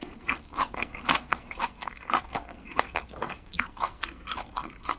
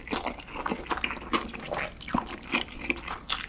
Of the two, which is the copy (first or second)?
first